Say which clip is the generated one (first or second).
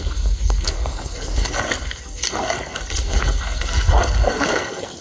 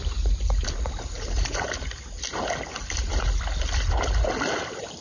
first